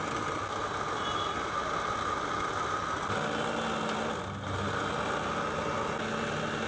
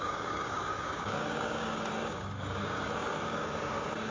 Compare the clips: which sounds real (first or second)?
first